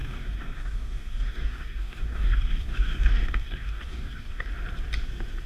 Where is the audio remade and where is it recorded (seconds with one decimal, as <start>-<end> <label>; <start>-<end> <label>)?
0.0-4.5 remade; 4.5-5.5 recorded